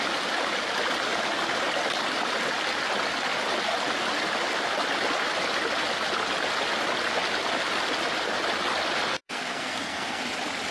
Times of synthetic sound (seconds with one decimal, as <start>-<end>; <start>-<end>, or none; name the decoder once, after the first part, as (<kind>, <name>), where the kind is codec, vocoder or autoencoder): 9.1-10.2 (codec, SNAC)